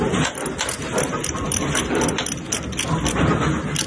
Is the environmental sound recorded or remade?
recorded